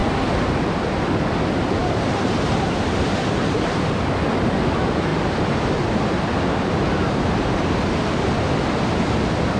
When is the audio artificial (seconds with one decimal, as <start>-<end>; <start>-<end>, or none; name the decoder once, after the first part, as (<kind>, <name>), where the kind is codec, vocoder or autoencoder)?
none